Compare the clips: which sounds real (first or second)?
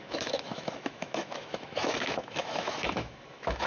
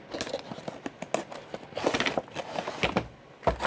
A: second